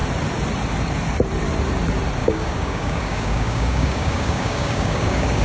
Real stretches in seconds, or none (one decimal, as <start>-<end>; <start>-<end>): 0.0-2.2